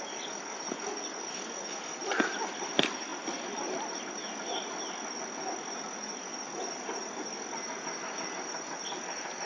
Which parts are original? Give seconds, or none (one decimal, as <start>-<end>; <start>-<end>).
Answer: 0.0-9.5